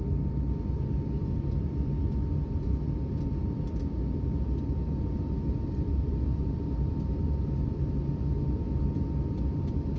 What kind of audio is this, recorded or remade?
remade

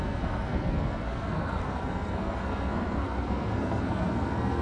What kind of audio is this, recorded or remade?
remade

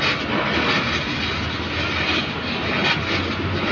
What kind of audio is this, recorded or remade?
recorded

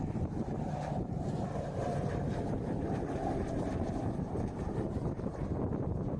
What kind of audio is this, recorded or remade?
remade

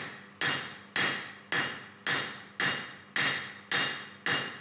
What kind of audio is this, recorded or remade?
recorded